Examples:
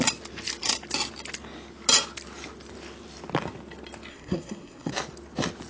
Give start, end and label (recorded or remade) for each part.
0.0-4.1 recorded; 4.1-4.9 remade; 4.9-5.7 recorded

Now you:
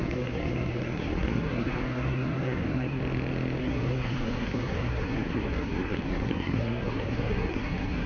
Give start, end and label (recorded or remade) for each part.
0.0-3.0 remade; 3.0-3.6 recorded; 3.6-8.1 remade